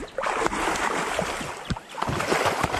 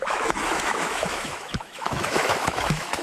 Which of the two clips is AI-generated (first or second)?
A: second